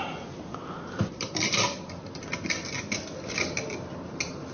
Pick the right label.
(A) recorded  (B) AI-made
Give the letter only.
A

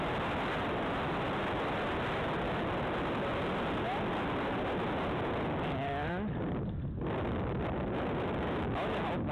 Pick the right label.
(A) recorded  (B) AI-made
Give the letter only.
A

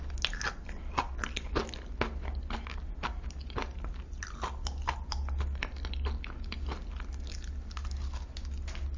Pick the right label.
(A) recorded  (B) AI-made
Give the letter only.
A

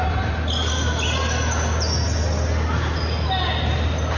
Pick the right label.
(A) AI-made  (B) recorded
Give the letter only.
B